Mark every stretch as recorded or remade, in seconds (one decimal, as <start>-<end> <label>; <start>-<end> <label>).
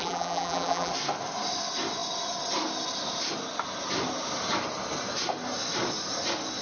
0.0-0.9 remade; 0.9-6.6 recorded